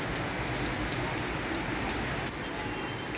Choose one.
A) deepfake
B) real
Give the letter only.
B